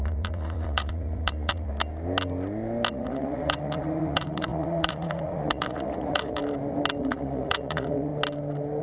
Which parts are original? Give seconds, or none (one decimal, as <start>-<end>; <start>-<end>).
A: 1.7-2.9; 6.4-7.0; 8.1-8.8